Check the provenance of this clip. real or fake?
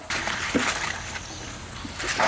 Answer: real